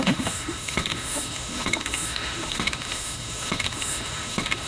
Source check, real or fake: fake